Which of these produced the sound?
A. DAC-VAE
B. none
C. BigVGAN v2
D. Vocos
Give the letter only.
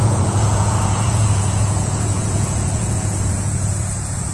D